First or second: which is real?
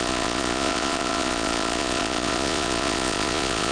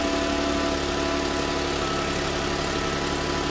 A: second